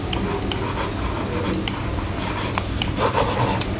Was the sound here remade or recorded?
remade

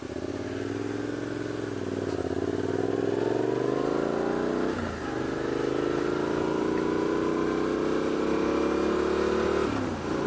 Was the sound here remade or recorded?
recorded